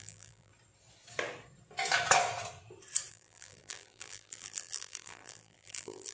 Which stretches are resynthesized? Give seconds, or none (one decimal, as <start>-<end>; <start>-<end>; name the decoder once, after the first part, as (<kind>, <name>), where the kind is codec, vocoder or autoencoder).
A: 0.0-0.5 (vocoder, BigVGAN v2); 3.1-6.1